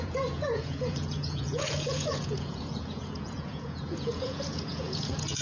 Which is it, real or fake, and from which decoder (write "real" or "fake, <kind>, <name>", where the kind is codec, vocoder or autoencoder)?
fake, vocoder, Vocos